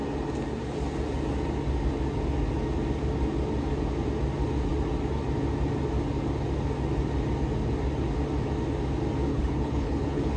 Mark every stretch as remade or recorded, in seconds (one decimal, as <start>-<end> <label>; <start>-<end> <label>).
0.0-9.3 recorded; 9.3-10.4 remade